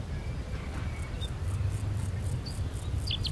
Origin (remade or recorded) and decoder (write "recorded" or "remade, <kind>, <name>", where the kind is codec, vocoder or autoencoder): recorded